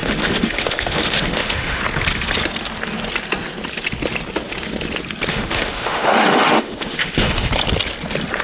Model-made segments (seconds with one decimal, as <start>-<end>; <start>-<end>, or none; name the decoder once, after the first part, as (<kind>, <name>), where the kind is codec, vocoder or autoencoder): 0.0-1.8 (autoencoder, DAC-VAE); 5.3-7.5